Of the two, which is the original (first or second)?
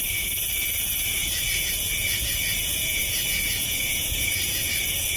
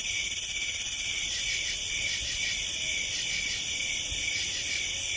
second